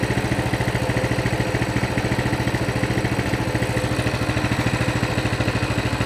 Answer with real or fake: real